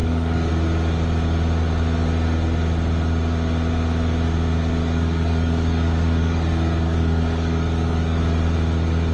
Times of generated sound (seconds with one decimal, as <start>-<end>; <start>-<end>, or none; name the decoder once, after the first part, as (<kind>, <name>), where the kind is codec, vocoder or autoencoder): 0.0-0.5 (codec, DAC); 4.8-8.2